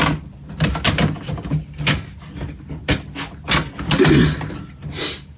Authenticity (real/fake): real